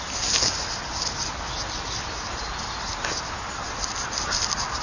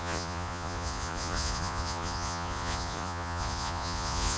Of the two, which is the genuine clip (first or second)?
first